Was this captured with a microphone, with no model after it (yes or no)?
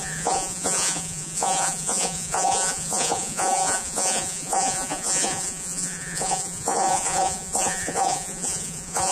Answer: no